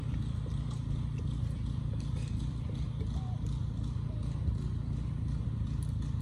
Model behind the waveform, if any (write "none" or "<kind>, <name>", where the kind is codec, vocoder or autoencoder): none